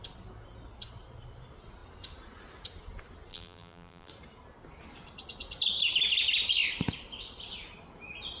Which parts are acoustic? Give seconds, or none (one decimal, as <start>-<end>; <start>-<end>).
0.0-3.3; 4.1-8.4